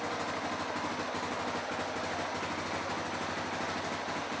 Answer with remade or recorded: recorded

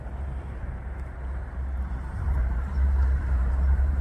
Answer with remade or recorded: remade